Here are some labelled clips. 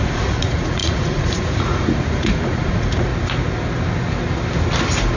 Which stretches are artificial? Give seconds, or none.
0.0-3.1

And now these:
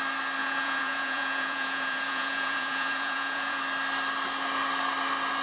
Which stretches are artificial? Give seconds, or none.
0.4-3.6